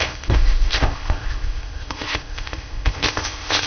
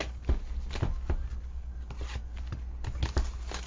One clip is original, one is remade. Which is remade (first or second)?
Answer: first